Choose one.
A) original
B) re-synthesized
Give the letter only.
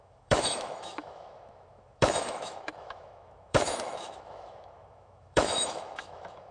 B